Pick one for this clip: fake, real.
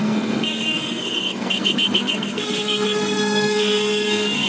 fake